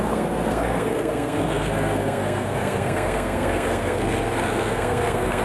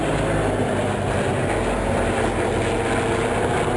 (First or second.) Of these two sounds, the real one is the second